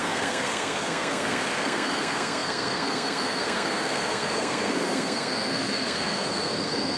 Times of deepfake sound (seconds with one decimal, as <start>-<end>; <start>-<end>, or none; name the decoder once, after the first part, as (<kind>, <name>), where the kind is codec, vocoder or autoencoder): 0.0-7.0 (codec, SNAC)